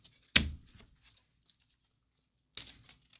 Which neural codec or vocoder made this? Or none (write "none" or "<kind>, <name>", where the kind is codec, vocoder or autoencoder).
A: none